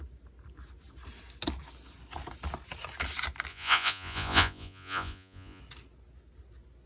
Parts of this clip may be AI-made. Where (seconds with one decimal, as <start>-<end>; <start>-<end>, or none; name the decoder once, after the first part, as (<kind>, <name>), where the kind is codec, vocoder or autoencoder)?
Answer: 3.5-5.6 (vocoder, Vocos)